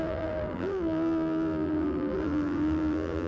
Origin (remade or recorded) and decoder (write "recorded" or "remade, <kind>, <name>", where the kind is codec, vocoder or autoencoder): remade, vocoder, BigVGAN v2